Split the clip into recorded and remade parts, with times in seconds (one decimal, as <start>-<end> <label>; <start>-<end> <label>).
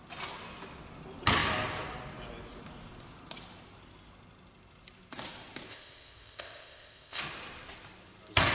0.0-5.7 recorded; 5.7-7.2 remade; 7.2-8.5 recorded